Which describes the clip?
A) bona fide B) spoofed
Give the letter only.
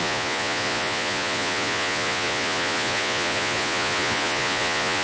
B